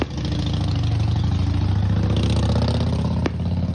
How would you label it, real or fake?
real